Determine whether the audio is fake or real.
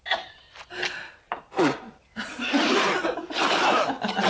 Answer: real